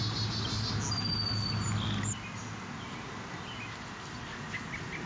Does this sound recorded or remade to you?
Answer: recorded